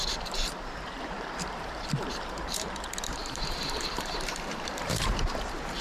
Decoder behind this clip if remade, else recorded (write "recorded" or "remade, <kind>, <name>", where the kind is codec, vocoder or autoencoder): remade, vocoder, BigVGAN v2